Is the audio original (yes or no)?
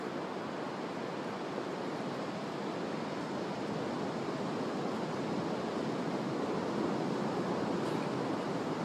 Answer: yes